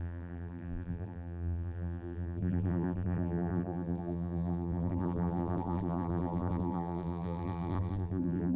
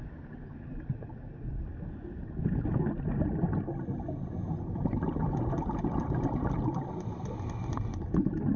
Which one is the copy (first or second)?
first